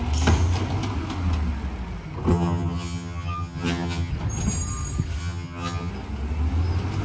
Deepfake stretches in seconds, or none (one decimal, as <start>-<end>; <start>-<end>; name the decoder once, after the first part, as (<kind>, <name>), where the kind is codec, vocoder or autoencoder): 2.3-4.1 (vocoder, HiFi-GAN); 5.2-5.9